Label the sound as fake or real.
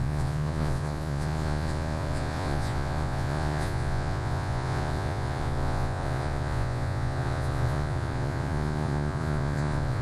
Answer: fake